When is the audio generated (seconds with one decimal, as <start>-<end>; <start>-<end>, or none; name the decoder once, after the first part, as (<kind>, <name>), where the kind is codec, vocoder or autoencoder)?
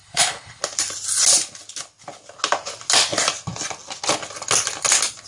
0.0-0.6 (codec, HILCodec)